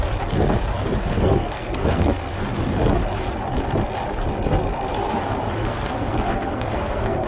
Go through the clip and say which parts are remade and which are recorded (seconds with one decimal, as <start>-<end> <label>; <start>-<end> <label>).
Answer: 0.0-1.0 recorded; 1.0-2.4 remade; 2.4-5.6 recorded; 5.6-7.3 remade